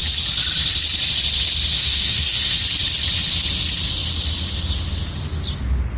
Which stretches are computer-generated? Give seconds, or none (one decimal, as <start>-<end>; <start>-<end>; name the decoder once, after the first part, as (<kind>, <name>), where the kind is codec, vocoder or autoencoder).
1.7-2.6 (autoencoder, DAC-VAE)